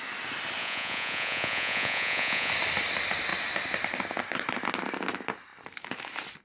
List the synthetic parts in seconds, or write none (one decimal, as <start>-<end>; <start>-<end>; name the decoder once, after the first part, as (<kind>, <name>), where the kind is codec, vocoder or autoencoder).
0.6-2.5 (vocoder, Vocos)